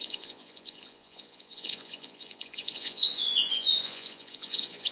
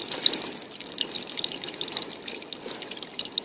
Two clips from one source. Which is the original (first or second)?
second